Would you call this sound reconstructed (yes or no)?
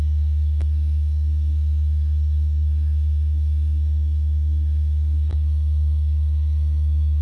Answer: yes